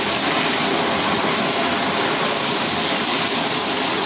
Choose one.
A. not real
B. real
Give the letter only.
B